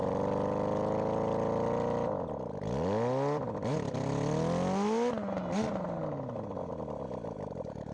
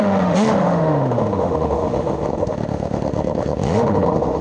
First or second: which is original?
first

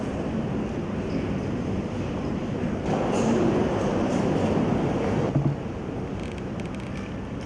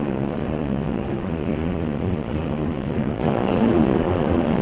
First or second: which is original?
first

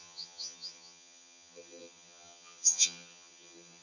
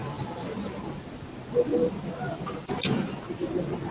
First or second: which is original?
second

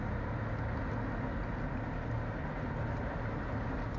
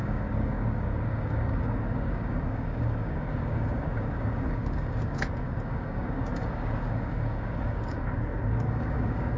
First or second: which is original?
first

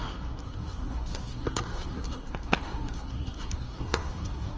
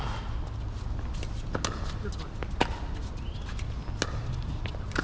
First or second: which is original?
second